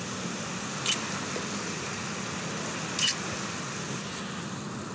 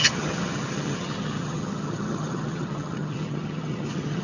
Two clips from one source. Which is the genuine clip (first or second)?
first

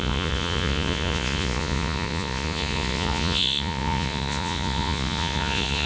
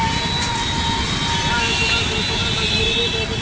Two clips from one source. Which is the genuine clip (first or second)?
second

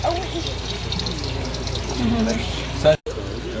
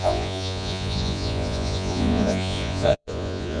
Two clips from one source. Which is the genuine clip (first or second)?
first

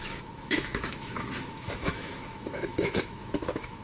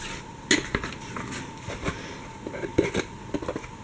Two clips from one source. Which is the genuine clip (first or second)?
second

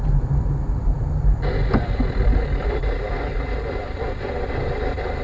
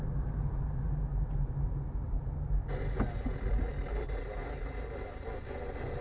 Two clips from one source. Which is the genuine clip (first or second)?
second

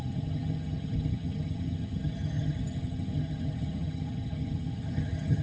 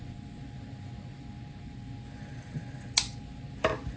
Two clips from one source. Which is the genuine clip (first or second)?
second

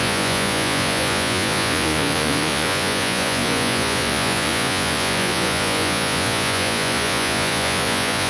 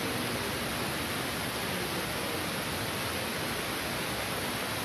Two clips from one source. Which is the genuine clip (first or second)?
second